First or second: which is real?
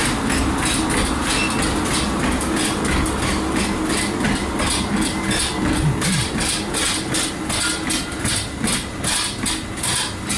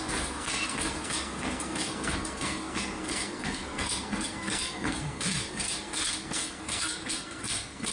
first